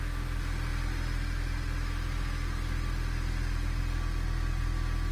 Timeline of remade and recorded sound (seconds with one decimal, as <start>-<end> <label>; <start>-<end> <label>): 0.0-5.1 recorded

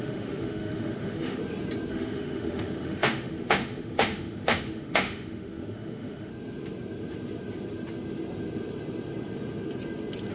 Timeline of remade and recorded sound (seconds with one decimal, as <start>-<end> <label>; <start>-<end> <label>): 0.0-1.4 remade; 1.4-1.9 recorded; 1.9-6.3 remade; 6.3-10.3 recorded

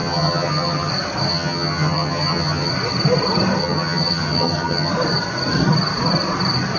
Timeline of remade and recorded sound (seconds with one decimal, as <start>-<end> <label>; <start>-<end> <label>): 0.0-0.9 remade; 0.9-1.3 recorded; 1.3-2.7 remade; 2.7-3.6 recorded; 3.6-4.9 remade; 4.9-6.8 recorded

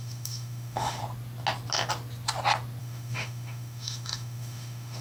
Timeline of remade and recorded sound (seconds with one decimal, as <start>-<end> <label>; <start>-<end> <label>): 0.0-1.0 remade; 1.0-2.8 recorded; 2.8-5.0 remade

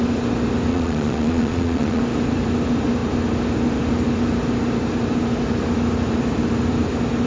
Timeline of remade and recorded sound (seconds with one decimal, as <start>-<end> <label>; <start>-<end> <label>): 0.0-0.7 recorded; 0.7-2.0 remade; 2.0-7.3 recorded

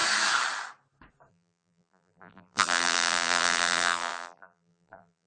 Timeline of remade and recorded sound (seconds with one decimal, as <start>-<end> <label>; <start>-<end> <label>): 0.0-1.3 recorded; 1.3-5.3 remade